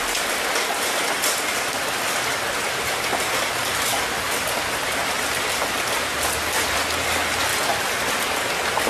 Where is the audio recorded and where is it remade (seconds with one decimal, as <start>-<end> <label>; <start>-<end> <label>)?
0.0-8.9 recorded